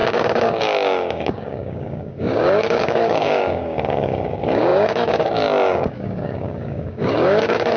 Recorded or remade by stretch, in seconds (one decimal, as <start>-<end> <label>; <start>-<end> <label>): 0.0-7.8 remade